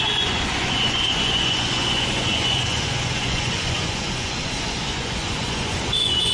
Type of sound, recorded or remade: remade